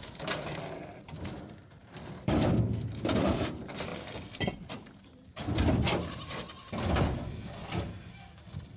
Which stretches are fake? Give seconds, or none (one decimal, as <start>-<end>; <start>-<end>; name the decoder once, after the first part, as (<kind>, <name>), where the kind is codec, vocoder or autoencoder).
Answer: 0.0-8.8 (vocoder, BigVGAN v2)